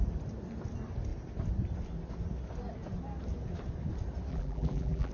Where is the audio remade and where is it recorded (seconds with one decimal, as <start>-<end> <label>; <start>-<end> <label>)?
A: 0.0-4.3 recorded; 4.3-5.1 remade